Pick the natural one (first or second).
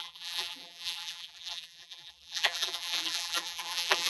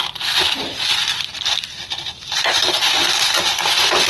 second